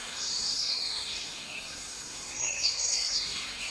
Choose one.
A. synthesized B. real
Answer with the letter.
A